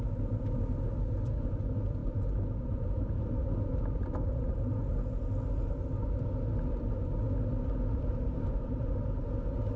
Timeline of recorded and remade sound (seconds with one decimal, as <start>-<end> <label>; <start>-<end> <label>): 0.0-2.0 recorded; 2.0-3.2 remade; 3.2-8.1 recorded; 8.1-8.7 remade; 8.7-9.8 recorded